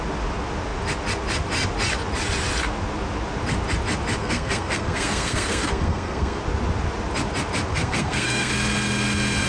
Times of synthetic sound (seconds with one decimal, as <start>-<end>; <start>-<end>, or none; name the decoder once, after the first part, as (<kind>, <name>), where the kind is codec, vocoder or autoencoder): 4.2-6.4 (codec, SNAC); 7.7-8.5